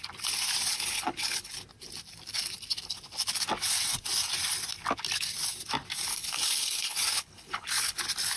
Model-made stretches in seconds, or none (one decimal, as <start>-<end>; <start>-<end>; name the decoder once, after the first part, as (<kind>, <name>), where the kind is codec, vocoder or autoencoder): 0.7-1.5 (codec, HILCodec); 6.1-8.0